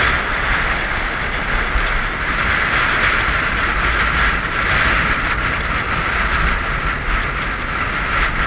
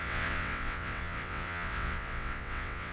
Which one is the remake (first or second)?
second